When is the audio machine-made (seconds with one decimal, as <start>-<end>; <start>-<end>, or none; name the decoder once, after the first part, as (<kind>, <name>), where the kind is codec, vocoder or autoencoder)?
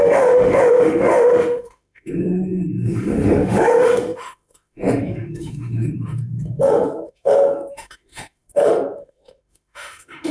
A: 0.0-10.3 (autoencoder, DAC-VAE)